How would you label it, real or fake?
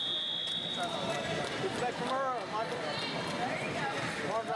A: real